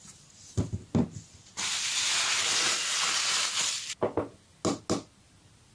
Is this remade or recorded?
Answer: recorded